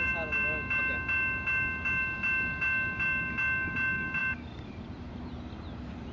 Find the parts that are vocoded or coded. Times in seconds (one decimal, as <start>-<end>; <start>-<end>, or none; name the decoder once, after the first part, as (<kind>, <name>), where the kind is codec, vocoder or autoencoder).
none